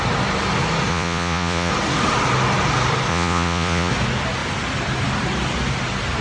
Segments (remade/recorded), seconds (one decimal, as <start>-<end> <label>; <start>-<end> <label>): 0.0-0.9 recorded; 0.9-1.7 remade; 1.7-3.1 recorded; 3.1-3.9 remade; 3.9-6.2 recorded

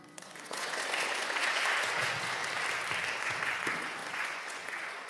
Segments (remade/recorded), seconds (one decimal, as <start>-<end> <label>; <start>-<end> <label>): 0.0-2.4 remade; 2.4-3.2 recorded; 3.2-5.1 remade

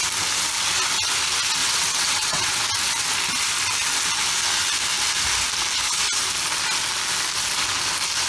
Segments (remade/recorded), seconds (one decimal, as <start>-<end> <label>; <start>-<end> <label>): 0.0-1.6 recorded; 1.6-2.6 remade; 2.6-8.3 recorded

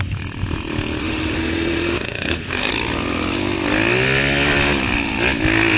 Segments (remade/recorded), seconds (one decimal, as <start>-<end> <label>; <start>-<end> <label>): 0.0-1.0 recorded; 1.0-2.7 remade; 2.7-5.8 recorded

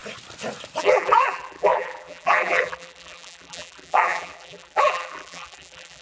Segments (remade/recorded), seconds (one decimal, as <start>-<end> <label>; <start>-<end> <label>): 0.0-0.8 recorded; 0.8-6.0 remade

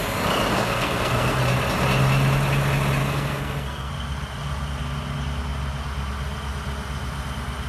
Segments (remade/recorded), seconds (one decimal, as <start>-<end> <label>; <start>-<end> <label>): 0.0-0.5 recorded; 0.5-1.4 remade; 1.4-3.0 recorded; 3.0-3.9 remade; 3.9-7.7 recorded

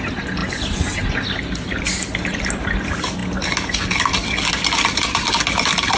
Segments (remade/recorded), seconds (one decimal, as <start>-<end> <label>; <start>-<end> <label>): 0.0-6.0 recorded

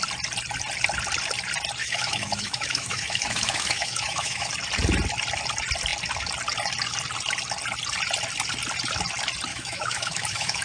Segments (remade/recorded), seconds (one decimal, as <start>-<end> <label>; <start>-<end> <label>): 0.0-1.8 recorded; 1.8-4.5 remade; 4.5-9.5 recorded; 9.5-10.6 remade